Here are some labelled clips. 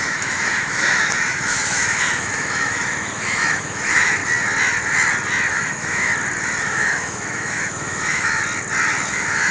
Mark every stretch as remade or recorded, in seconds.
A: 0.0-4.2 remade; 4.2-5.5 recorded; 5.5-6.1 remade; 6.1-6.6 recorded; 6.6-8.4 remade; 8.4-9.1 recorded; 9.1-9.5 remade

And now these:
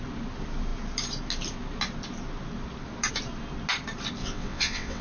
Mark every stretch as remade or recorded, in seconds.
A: 0.0-4.2 recorded; 4.2-5.0 remade

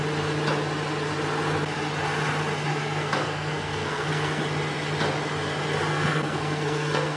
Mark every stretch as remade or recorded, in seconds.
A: 0.0-2.7 recorded; 2.7-4.4 remade; 4.4-5.9 recorded; 5.9-7.2 remade

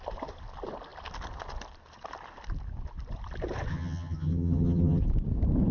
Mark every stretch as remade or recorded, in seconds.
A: 0.0-3.7 recorded; 3.7-5.0 remade; 5.0-5.7 recorded

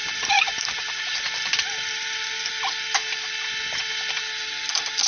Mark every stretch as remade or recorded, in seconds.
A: 0.0-2.5 remade; 2.5-5.1 recorded